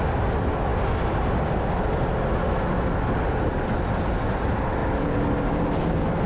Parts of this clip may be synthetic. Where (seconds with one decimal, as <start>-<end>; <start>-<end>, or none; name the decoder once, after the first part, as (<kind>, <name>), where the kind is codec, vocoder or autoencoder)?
none